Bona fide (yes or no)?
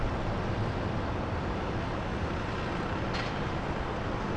yes